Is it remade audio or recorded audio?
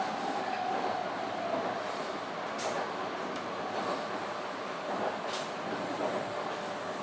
recorded